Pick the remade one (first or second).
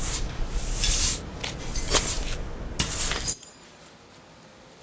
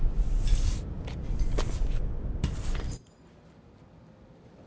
second